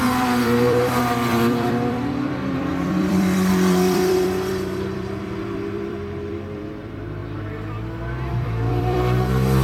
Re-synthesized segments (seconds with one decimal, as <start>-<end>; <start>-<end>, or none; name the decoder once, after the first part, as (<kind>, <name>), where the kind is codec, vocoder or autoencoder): 0.0-7.2 (vocoder, BigVGAN v2); 8.7-9.6